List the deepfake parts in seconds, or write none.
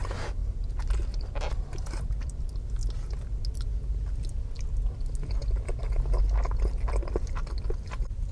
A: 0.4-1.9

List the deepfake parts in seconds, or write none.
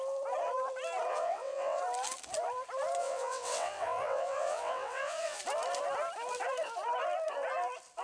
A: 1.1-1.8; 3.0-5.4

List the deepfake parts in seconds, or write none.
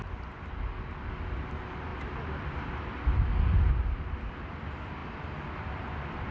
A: none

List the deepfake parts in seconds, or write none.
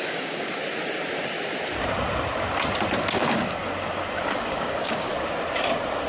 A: 0.0-0.6; 3.1-3.6; 4.3-5.1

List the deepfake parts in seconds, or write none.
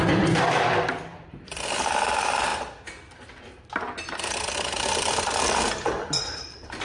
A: 0.0-2.5; 4.1-6.8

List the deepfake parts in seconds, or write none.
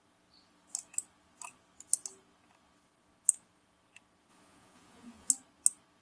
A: 4.3-5.3